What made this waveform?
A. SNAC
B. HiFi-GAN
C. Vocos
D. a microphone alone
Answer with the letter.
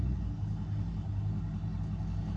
D